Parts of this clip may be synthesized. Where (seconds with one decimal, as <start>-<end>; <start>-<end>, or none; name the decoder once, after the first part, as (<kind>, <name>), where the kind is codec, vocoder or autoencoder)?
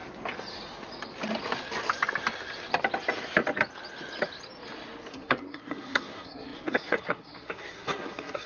5.1-8.5 (codec, SNAC)